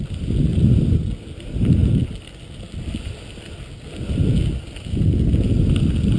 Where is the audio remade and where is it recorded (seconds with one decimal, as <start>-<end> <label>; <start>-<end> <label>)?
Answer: 0.0-6.2 recorded